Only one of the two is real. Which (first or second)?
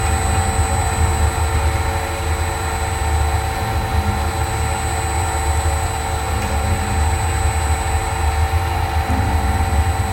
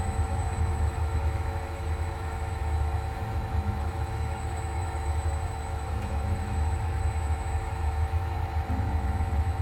first